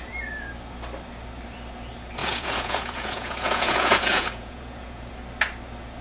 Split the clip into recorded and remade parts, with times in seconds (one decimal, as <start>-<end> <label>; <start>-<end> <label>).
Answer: 0.0-2.2 recorded; 2.2-5.1 remade; 5.1-6.0 recorded